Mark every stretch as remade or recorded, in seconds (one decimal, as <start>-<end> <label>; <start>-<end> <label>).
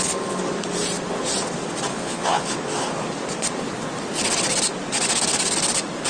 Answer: 0.0-1.9 recorded; 1.9-2.5 remade; 2.5-6.1 recorded